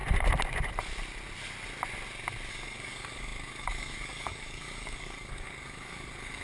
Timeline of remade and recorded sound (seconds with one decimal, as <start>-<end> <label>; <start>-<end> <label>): 0.0-2.5 recorded; 2.5-6.4 remade